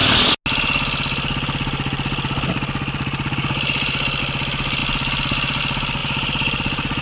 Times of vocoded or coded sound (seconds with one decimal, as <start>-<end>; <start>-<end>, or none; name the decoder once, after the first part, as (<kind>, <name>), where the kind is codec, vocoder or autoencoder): 6.0-7.0 (vocoder, BigVGAN v2)